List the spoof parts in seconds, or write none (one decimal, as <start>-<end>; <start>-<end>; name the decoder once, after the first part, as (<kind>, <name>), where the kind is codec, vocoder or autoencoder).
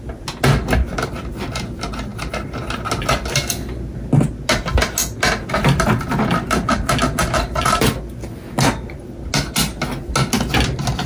7.2-7.9 (vocoder, BigVGAN v2)